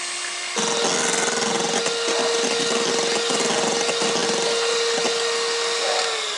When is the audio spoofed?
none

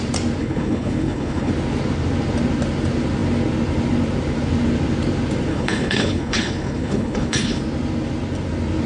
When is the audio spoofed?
0.4-1.5 (codec, HILCodec); 5.5-7.6

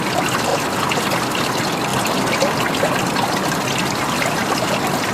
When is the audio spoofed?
none

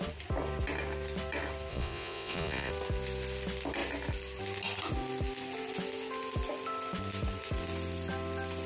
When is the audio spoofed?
1.7-2.7 (vocoder, Vocos)

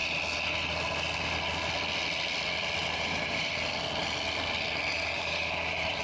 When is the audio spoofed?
2.8-3.5 (vocoder, BigVGAN v2); 4.9-6.0

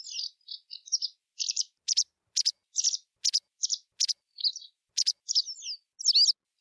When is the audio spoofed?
none

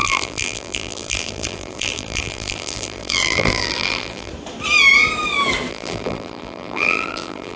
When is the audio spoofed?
0.0-4.3 (vocoder, BigVGAN v2); 5.7-7.6

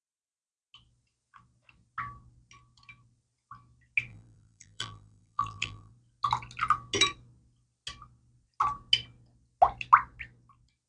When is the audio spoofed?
4.1-5.9 (vocoder, BigVGAN v2)